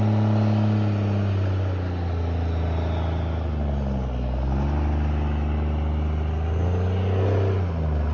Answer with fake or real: real